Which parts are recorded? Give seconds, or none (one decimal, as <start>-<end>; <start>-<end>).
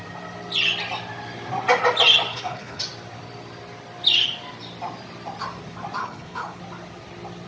0.0-2.3; 2.8-6.0; 6.6-7.5